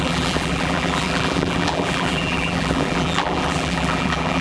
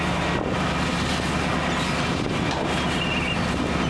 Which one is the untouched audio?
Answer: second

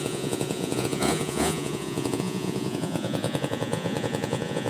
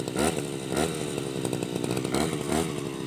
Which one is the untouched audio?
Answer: second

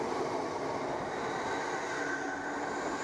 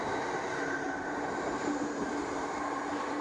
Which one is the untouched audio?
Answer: first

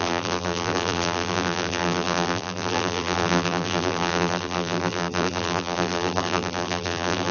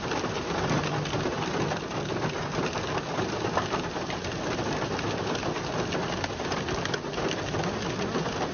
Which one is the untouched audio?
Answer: second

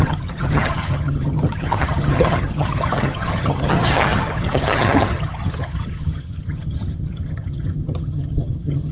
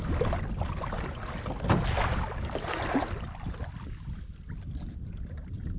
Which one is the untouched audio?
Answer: second